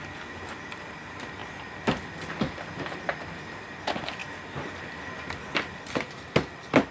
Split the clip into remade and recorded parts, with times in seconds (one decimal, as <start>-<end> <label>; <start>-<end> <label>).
0.0-6.9 recorded